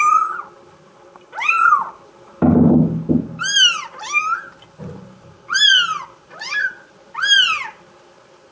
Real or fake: real